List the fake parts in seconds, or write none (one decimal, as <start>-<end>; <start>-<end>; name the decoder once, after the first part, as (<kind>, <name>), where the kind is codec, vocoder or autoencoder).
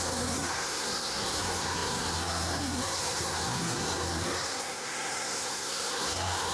0.0-6.5 (codec, SNAC)